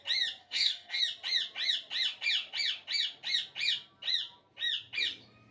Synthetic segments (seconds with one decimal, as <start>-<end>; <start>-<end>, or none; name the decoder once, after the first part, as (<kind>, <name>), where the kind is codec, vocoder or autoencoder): 0.4-1.0 (codec, DAC)

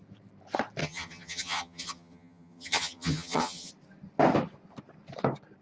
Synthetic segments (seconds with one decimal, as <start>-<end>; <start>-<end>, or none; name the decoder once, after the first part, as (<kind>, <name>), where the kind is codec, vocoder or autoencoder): 0.8-3.7 (vocoder, HiFi-GAN)

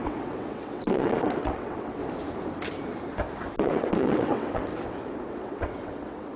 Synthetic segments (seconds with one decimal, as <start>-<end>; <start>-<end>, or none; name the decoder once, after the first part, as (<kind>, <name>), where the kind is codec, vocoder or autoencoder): 0.0-2.0 (vocoder, WaveNeXt); 3.6-4.7; 5.3-6.4